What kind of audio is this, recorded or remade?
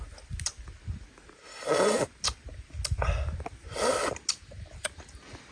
recorded